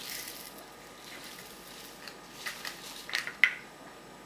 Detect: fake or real real